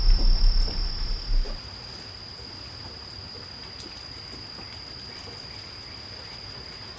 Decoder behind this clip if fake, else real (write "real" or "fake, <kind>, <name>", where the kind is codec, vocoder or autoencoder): real